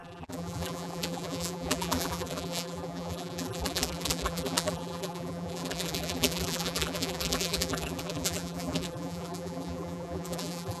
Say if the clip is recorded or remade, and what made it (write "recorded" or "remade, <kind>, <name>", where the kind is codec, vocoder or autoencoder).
remade, vocoder, BigVGAN v2